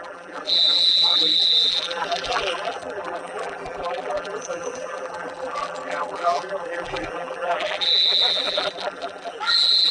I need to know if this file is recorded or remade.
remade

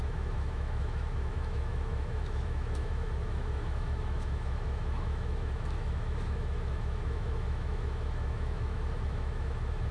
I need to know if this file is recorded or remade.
remade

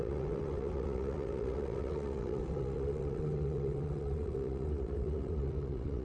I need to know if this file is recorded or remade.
remade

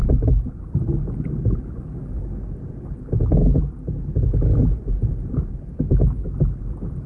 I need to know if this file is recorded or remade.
recorded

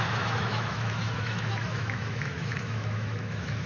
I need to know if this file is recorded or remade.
remade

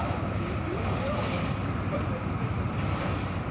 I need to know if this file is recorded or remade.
remade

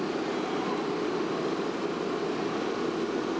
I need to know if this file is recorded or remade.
recorded